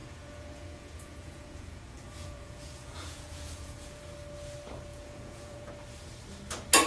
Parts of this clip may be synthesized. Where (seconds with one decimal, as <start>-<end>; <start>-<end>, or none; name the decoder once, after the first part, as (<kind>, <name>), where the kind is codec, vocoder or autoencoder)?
0.0-4.1 (vocoder, Vocos); 4.9-5.7